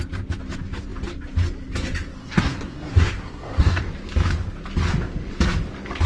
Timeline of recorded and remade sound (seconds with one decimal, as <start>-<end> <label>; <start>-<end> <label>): 0.0-2.2 recorded; 2.2-3.8 remade; 3.8-6.1 recorded